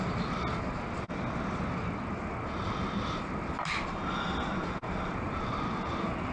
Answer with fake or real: real